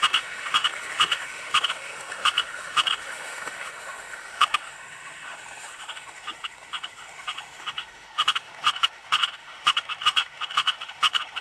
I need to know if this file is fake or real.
fake